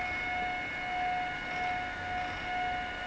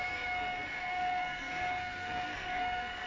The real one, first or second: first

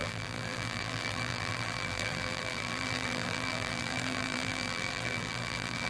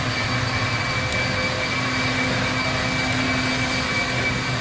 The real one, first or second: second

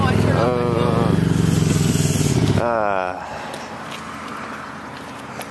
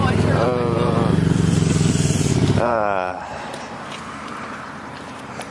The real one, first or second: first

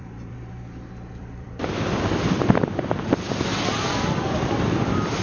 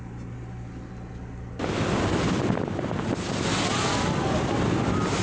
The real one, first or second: second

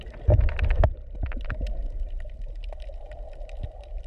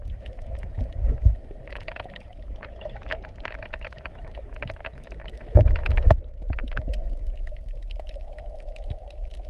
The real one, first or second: first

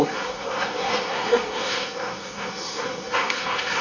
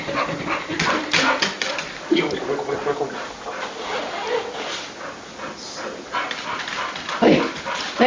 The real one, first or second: second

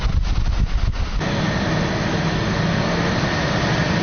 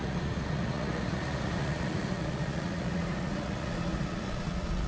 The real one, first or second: first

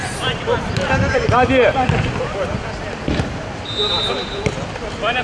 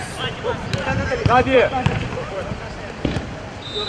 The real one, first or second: first